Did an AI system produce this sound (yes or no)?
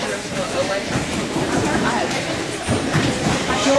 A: yes